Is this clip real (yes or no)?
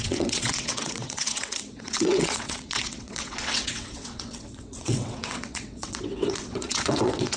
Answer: no